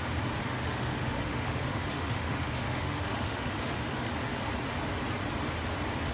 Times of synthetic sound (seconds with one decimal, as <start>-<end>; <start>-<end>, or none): 0.4-4.1